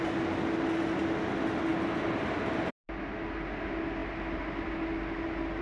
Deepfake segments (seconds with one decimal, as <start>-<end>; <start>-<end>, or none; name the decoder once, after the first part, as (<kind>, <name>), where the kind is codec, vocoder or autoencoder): none